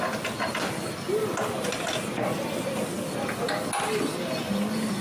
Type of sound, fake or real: real